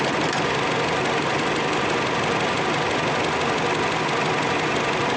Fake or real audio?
real